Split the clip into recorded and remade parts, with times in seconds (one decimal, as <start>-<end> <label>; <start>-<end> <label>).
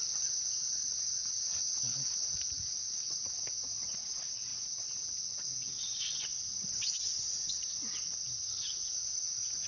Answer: 0.0-1.0 remade; 1.0-9.7 recorded